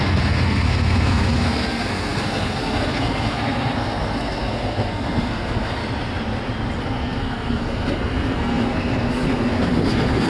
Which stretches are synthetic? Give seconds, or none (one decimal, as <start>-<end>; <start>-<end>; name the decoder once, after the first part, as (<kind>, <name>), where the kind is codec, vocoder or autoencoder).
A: 0.0-5.8 (codec, SNAC); 6.8-10.3